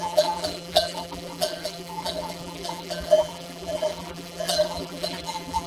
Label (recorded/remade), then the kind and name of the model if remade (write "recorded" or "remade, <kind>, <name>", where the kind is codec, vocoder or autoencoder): remade, vocoder, BigVGAN v2